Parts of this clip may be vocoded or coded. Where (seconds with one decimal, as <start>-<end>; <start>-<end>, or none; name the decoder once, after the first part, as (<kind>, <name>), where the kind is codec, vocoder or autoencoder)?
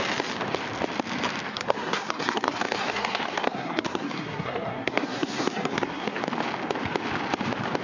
1.5-6.2 (codec, SNAC)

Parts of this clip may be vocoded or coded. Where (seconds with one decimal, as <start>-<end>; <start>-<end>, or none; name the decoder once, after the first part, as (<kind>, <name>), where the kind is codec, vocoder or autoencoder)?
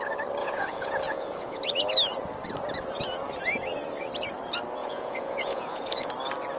0.4-1.6 (vocoder, Vocos); 4.8-6.1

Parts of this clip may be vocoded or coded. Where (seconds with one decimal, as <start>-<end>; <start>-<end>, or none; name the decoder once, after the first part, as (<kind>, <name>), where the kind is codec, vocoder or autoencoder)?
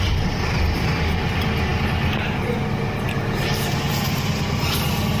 none